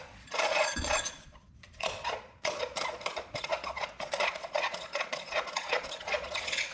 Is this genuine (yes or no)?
no